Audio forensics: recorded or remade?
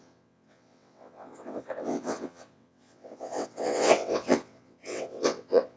remade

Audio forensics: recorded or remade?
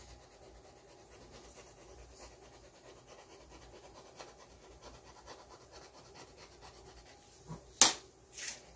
recorded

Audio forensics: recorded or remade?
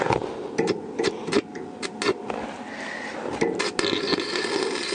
recorded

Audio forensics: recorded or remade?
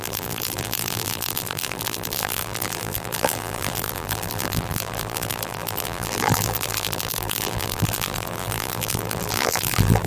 remade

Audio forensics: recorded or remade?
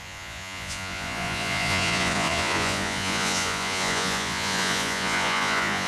remade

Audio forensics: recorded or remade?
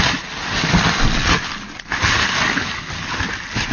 recorded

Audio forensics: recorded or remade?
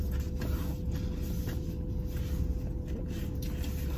recorded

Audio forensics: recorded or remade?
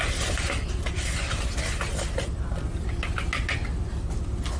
recorded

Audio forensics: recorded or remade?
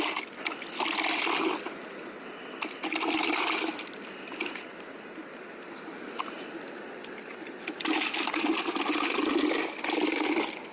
recorded